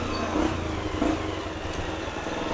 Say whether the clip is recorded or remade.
recorded